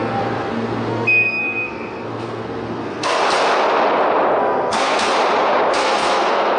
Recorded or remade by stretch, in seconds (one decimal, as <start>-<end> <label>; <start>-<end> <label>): 0.0-3.2 remade; 3.2-4.4 recorded; 4.4-5.1 remade; 5.1-5.7 recorded; 5.7-6.6 remade